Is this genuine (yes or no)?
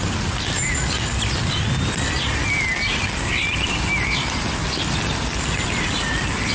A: yes